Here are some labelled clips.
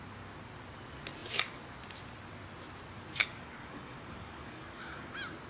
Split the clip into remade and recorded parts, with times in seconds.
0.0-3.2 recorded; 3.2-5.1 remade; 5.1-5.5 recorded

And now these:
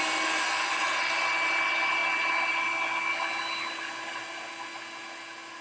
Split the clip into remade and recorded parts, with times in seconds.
0.0-5.6 recorded

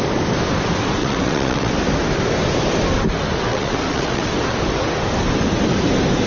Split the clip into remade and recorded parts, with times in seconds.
0.0-1.0 recorded; 1.0-1.7 remade; 1.7-3.5 recorded; 3.5-4.3 remade; 4.3-6.3 recorded

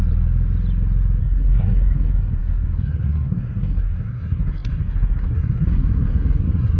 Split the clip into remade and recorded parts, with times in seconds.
0.0-1.2 recorded; 1.2-6.8 remade

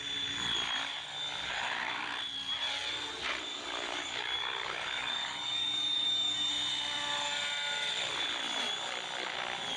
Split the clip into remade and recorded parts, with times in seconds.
0.0-1.4 recorded; 1.4-1.9 remade; 1.9-3.5 recorded; 3.5-6.5 remade; 6.5-9.8 recorded

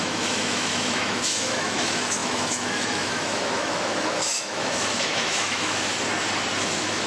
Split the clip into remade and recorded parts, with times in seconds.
0.0-5.9 remade; 5.9-6.6 recorded; 6.6-7.1 remade